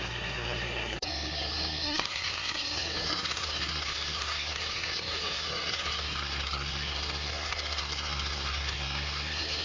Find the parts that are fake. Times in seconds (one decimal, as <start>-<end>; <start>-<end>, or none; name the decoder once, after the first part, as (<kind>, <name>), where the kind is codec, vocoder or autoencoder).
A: 0.0-9.6 (codec, SNAC)